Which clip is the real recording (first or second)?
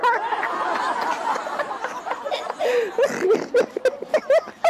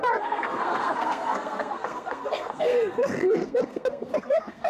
first